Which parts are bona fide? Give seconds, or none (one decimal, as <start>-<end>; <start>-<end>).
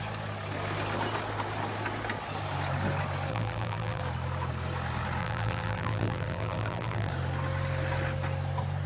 0.0-3.3; 4.0-5.2; 7.1-8.9